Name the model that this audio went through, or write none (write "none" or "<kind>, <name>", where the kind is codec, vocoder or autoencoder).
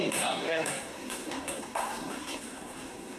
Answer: codec, SNAC